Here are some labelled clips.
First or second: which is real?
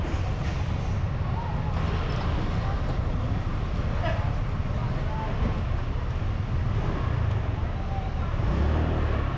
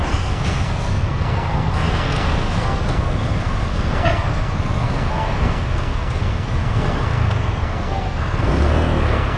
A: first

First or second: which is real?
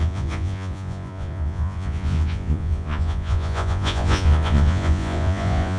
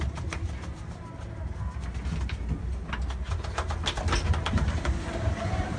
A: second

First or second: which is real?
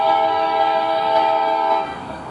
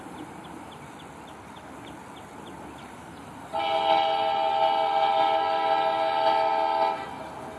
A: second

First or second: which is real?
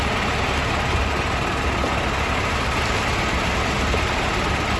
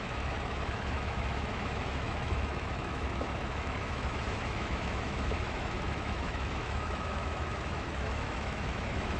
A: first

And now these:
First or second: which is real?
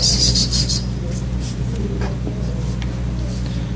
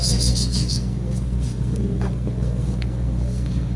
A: first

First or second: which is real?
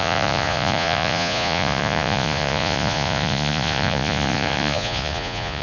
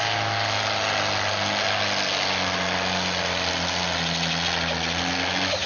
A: second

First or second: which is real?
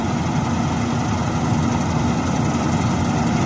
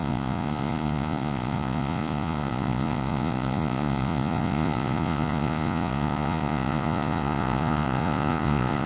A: first